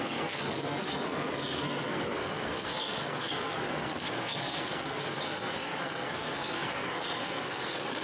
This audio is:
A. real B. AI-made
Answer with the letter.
B